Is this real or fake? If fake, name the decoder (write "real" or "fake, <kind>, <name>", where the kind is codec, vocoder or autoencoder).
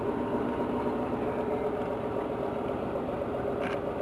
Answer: real